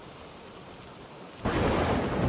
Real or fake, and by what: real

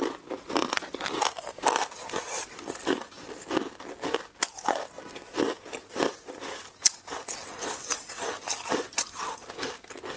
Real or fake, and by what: real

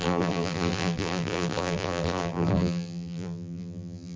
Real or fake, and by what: fake, vocoder, BigVGAN v2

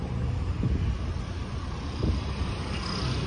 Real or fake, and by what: real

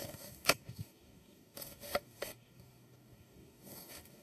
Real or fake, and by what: fake, codec, DAC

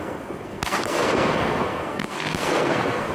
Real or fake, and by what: fake, codec, SNAC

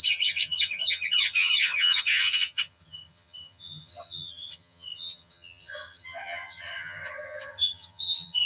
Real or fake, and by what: fake, vocoder, HiFi-GAN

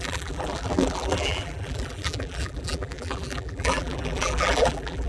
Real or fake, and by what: fake, vocoder, BigVGAN v2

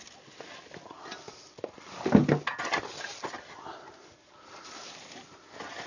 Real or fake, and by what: real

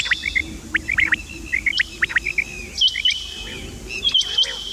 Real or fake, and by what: real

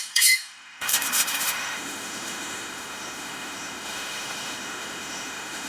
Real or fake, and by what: fake, autoencoder, DAC-VAE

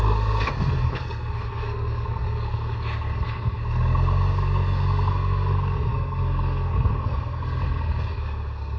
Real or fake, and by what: fake, codec, SNAC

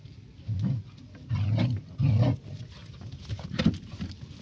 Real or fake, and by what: real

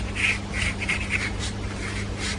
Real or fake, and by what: real